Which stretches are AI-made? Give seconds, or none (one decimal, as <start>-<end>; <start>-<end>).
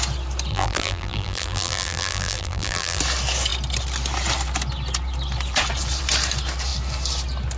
0.5-3.0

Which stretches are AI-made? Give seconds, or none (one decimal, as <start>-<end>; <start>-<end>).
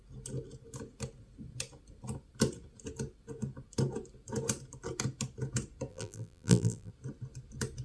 5.9-6.9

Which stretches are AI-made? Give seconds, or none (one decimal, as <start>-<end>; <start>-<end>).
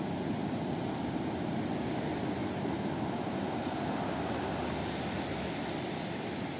0.4-1.4; 2.4-3.7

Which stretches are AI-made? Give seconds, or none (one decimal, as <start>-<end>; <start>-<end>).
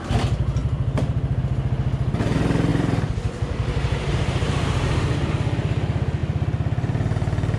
0.6-1.4; 2.7-5.3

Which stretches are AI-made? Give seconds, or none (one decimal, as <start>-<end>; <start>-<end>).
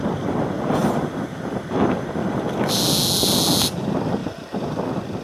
4.2-4.8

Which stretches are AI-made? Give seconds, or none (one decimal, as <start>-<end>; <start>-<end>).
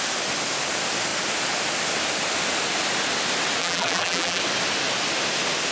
3.6-4.4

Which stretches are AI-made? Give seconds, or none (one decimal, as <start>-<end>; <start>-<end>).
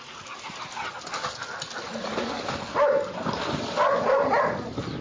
1.4-4.3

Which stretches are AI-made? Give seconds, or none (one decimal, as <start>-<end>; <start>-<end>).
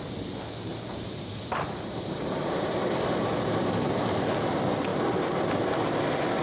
0.7-4.2; 4.9-5.4